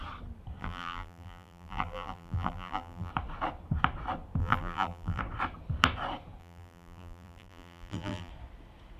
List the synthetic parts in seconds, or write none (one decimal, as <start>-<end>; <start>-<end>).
0.6-3.1; 4.4-5.2; 6.4-8.3